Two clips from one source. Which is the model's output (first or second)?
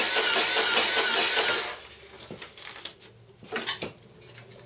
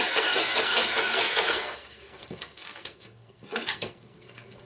second